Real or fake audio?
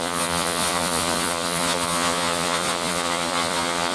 fake